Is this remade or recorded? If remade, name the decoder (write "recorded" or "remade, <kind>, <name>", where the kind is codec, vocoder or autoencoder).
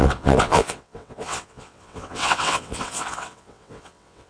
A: remade, vocoder, WaveNeXt